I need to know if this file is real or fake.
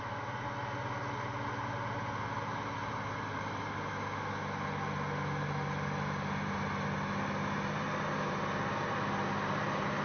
real